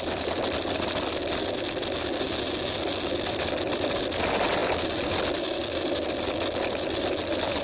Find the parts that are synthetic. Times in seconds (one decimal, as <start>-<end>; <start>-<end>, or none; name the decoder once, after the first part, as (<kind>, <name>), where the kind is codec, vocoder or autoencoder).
none